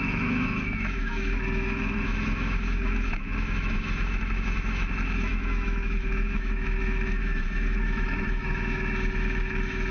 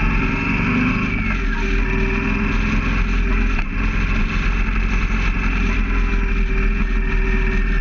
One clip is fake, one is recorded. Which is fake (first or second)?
first